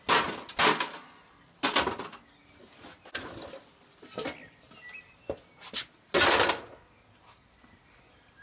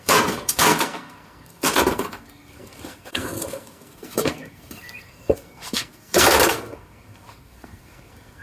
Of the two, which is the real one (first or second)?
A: first